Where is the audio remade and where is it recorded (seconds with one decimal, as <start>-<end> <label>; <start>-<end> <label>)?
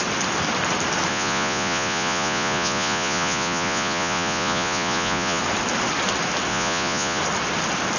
0.0-1.1 recorded; 1.1-5.4 remade; 5.4-6.5 recorded; 6.5-7.2 remade; 7.2-8.0 recorded